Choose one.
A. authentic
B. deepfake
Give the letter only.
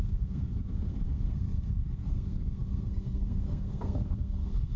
B